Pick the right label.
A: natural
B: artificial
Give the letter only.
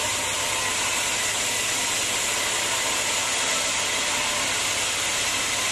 A